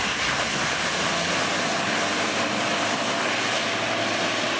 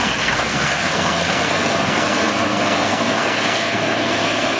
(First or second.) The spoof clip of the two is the second